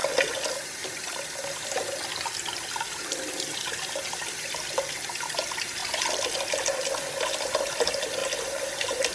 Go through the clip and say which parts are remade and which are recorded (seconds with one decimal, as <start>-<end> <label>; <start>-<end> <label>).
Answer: 0.0-8.2 recorded; 8.2-9.1 remade